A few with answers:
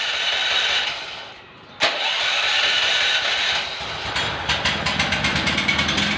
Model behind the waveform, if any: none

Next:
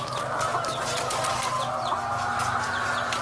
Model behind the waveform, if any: none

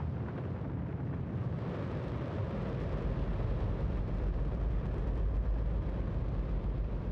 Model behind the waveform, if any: none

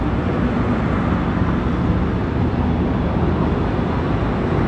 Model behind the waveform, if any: none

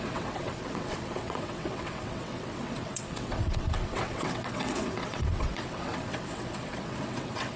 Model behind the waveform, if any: vocoder, WaveNeXt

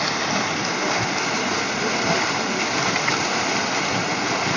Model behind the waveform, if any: none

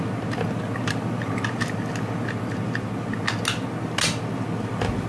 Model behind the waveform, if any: none